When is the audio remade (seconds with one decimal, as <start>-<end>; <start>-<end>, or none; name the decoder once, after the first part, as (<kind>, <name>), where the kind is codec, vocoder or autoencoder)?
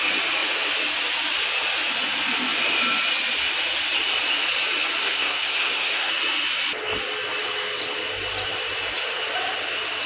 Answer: 5.0-6.1 (codec, SNAC)